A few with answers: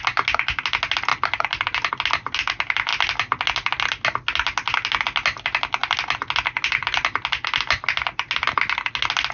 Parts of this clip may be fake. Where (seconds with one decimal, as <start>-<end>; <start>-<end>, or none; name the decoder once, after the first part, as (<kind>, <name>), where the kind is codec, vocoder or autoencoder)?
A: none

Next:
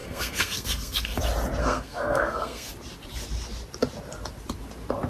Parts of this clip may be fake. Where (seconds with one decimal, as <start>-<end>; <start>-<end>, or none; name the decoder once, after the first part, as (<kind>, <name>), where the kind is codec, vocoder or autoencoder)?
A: 0.0-1.2 (codec, SNAC); 1.6-2.7

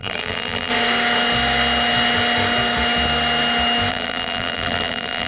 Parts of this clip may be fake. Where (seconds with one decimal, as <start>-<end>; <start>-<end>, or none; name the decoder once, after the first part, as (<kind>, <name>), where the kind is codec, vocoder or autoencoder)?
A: 0.0-0.7 (vocoder, BigVGAN v2); 3.9-5.3